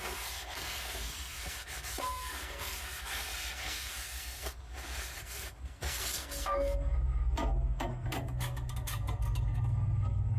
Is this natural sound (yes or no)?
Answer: no